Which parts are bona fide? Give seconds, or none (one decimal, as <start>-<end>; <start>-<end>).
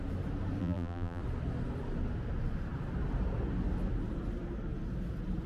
0.0-0.6; 1.2-5.5